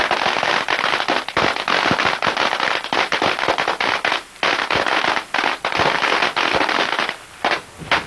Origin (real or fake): real